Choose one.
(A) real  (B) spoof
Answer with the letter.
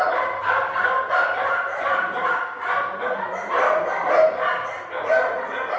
A